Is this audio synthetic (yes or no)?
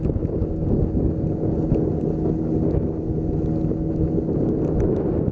no